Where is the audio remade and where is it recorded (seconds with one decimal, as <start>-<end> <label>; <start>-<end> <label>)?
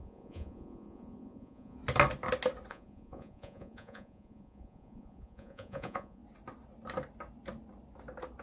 0.0-1.8 remade; 1.8-2.7 recorded; 2.7-6.2 remade; 6.2-8.4 recorded